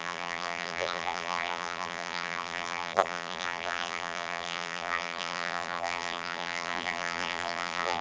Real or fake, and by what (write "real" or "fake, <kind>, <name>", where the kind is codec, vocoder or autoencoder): fake, vocoder, BigVGAN v2